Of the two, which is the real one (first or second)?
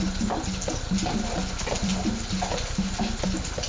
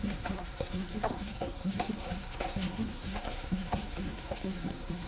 first